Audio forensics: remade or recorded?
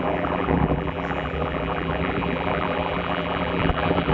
remade